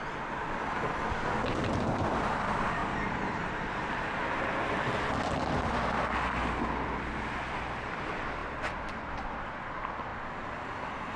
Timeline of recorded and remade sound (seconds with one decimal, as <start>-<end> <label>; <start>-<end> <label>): 0.0-2.8 recorded; 2.8-3.9 remade; 3.9-8.4 recorded; 8.4-9.6 remade; 9.6-11.2 recorded